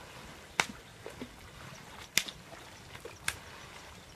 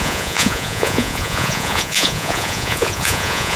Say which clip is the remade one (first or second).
second